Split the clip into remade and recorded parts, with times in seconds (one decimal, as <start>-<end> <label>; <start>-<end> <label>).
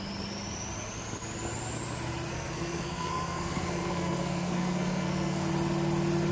0.0-2.3 recorded; 2.3-5.5 remade; 5.5-6.3 recorded